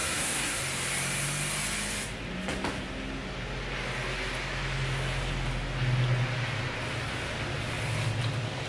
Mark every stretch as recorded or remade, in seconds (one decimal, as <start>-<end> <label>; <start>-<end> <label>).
0.0-0.6 remade; 0.6-8.7 recorded

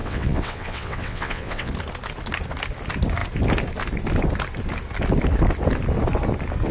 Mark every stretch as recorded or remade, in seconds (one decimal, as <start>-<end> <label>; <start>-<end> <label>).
0.0-1.7 remade; 1.7-6.7 recorded